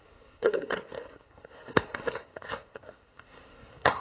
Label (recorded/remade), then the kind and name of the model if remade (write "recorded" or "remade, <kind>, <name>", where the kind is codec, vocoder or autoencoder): remade, codec, SNAC